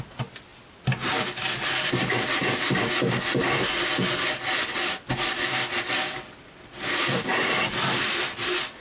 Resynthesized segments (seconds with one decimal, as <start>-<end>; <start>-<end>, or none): none